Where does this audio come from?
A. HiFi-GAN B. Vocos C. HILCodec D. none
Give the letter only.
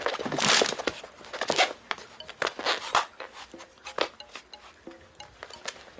D